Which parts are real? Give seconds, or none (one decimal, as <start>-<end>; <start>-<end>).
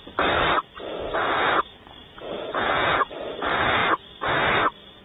0.0-2.0; 3.1-5.0